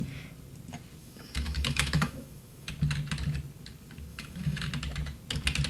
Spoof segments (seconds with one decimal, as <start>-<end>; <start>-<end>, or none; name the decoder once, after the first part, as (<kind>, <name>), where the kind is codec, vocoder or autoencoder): 1.0-2.7 (autoencoder, DAC-VAE); 4.1-4.7